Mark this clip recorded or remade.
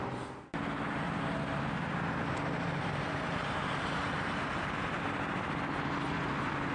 recorded